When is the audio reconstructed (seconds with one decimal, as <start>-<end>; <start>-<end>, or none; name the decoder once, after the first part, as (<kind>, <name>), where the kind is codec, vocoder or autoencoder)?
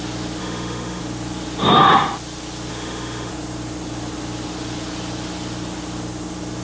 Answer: 0.4-1.0 (autoencoder, DAC-VAE); 2.7-3.3